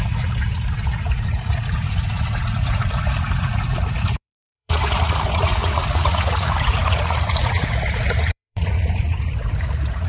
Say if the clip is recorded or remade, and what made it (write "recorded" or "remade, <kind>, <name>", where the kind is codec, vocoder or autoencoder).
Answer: remade, vocoder, Vocos